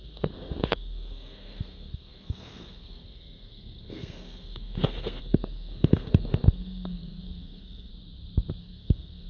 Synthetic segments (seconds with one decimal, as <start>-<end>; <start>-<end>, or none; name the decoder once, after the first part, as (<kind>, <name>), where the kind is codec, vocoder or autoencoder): 0.0-7.9 (codec, SNAC); 8.6-9.3